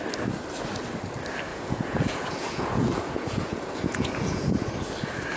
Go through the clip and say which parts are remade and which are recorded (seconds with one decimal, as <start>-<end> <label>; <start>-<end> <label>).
0.0-1.5 recorded; 1.5-4.7 remade; 4.7-5.4 recorded